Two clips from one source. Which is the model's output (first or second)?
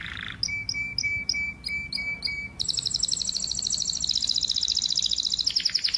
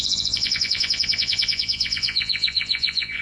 second